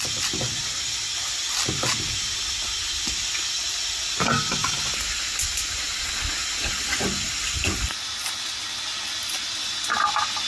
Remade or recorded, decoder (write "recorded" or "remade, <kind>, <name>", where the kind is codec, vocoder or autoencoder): recorded